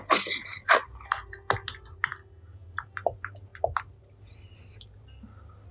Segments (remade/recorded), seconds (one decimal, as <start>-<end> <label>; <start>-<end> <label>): 0.0-5.7 recorded